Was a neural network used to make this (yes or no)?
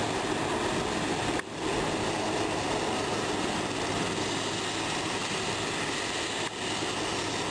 no